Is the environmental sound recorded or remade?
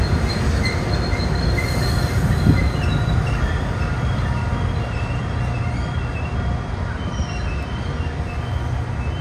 recorded